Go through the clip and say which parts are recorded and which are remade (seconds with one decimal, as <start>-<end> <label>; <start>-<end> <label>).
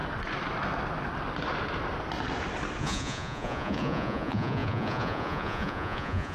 0.0-2.8 recorded; 2.8-6.3 remade